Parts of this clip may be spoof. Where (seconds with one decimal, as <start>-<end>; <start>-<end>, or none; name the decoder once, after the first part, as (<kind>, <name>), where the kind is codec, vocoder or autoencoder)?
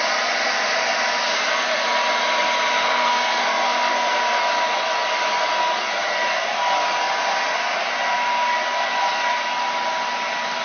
2.8-4.4 (codec, SNAC)